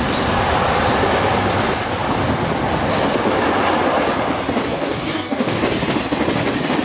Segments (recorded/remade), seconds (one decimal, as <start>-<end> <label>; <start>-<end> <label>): 0.0-4.7 recorded; 4.7-5.6 remade; 5.6-6.8 recorded